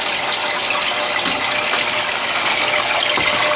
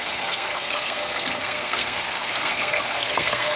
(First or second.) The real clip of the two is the first